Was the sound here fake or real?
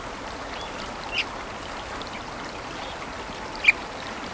real